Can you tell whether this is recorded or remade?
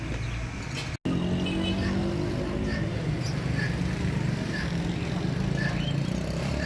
recorded